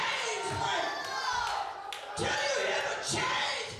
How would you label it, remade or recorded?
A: recorded